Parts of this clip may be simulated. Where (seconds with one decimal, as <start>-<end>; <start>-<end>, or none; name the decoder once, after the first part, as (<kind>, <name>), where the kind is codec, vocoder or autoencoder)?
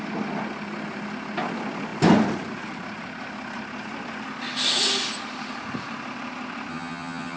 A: 6.7-7.4 (vocoder, HiFi-GAN)